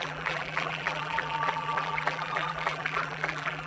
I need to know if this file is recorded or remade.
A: remade